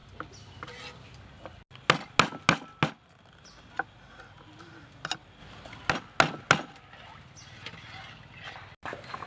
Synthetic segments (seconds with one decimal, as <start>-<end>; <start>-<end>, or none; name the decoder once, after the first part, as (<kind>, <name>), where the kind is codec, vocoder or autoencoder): 0.0-1.1 (vocoder, BigVGAN v2); 5.4-5.9